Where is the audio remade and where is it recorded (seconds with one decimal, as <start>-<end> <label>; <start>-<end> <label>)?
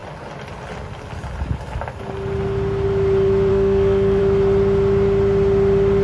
0.0-3.5 recorded; 3.5-4.2 remade; 4.2-6.0 recorded